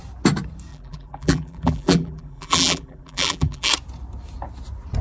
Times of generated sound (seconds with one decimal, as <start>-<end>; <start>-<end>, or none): 0.7-3.7